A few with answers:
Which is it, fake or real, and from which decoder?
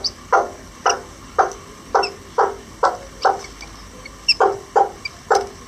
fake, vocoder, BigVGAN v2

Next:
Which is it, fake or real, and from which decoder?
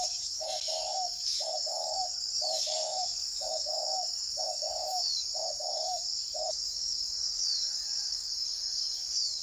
fake, codec, DAC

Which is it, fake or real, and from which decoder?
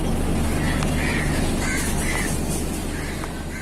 real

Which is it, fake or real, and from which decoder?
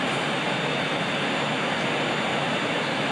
real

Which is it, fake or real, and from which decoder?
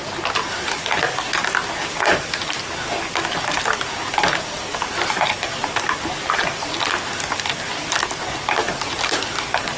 real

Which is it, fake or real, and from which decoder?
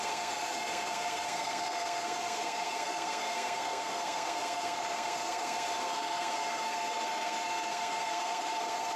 fake, codec, SNAC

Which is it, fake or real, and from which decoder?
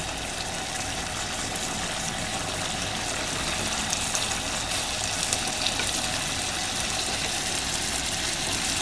real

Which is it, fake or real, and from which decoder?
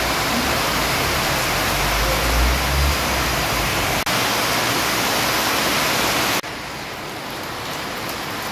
real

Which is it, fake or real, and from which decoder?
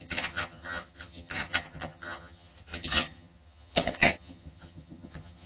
fake, vocoder, HiFi-GAN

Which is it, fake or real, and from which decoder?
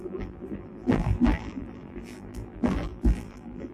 fake, vocoder, BigVGAN v2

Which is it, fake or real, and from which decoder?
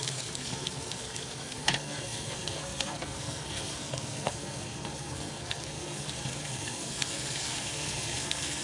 fake, codec, SNAC